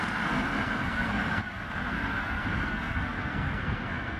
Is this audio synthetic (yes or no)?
yes